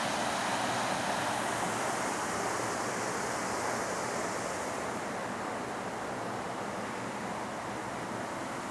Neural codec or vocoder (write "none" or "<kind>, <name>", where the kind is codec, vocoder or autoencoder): none